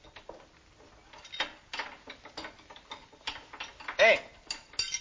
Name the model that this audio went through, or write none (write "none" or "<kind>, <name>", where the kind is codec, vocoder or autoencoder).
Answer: none